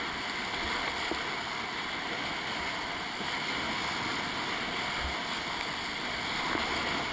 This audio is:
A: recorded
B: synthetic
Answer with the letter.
A